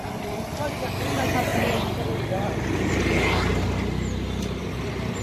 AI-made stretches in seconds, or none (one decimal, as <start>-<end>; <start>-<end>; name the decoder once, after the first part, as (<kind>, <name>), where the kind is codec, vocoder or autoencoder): none